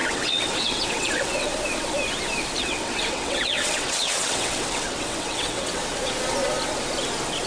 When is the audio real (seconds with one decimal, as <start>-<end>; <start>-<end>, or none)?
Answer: 1.5-2.6; 5.8-7.5